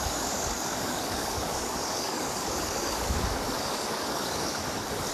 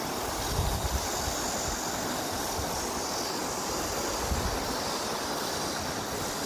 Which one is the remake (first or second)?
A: first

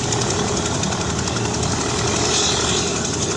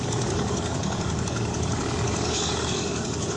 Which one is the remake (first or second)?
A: second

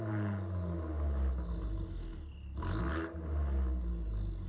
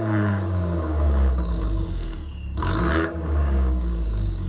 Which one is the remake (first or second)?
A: second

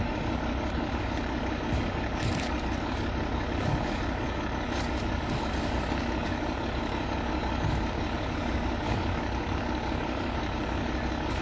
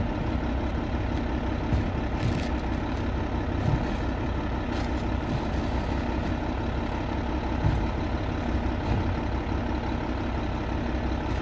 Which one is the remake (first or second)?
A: first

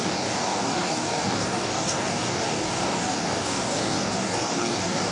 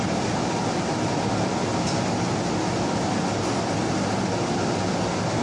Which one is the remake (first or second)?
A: first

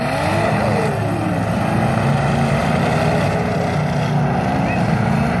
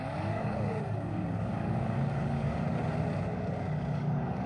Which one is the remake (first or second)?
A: second